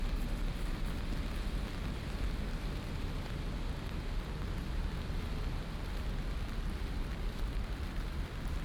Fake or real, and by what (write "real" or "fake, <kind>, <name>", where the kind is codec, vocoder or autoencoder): real